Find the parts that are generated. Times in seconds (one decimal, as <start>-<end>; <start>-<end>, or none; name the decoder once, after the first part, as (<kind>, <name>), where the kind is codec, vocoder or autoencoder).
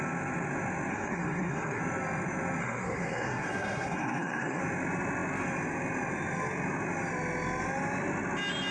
0.9-1.8 (codec, SNAC); 2.6-4.6